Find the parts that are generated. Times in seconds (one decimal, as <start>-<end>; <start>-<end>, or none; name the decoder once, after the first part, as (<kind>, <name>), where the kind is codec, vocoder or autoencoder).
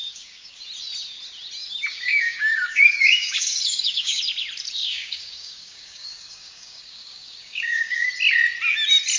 0.0-0.6 (codec, DAC); 1.9-4.2; 4.8-8.1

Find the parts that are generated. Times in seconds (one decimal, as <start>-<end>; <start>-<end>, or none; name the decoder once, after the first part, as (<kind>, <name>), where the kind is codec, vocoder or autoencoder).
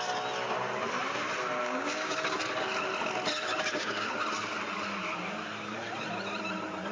1.6-2.4 (codec, DAC); 3.5-4.1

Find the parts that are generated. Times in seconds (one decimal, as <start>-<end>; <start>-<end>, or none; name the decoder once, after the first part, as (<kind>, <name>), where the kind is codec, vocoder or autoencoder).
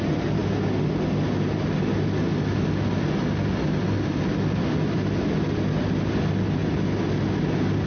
none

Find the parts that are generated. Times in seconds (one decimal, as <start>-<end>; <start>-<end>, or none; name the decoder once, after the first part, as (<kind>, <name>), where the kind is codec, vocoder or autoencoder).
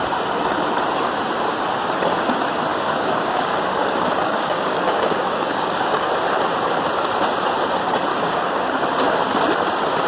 2.7-6.1 (codec, DAC); 8.1-8.8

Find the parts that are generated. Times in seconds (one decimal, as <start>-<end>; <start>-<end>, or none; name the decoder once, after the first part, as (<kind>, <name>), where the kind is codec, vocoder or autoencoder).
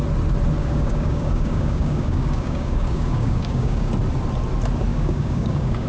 0.6-3.9 (codec, DAC); 4.9-5.9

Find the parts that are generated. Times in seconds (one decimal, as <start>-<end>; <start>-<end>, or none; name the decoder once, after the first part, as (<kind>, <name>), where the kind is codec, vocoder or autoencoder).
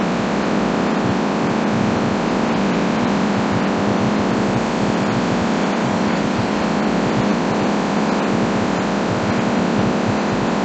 5.8-6.6 (codec, DAC)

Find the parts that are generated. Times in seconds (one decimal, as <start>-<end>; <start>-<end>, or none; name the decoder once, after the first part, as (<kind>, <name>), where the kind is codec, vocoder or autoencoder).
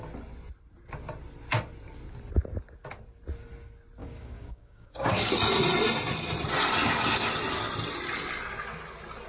4.0-5.3 (codec, DAC)